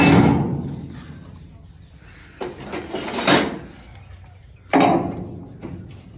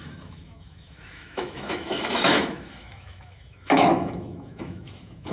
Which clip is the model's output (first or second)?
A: second